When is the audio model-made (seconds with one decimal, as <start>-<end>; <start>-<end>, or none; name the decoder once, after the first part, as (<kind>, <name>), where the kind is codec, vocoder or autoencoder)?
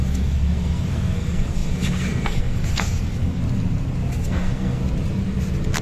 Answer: 0.0-3.4 (codec, SNAC); 4.1-4.8